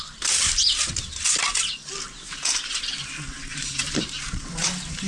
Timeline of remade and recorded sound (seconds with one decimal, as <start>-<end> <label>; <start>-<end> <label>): 0.0-3.5 recorded; 3.5-5.1 remade